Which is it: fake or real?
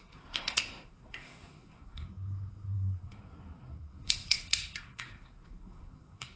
fake